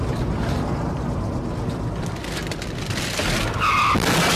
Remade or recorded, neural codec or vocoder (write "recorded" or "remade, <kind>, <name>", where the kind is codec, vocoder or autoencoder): recorded